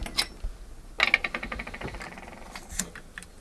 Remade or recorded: recorded